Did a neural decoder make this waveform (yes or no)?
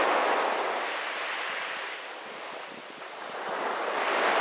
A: no